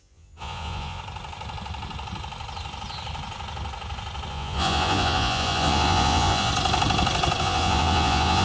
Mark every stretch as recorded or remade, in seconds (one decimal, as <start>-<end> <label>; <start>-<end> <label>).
0.0-1.0 remade; 1.0-4.3 recorded; 4.3-6.5 remade; 6.5-7.4 recorded; 7.4-8.4 remade